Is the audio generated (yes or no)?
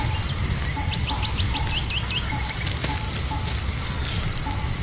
no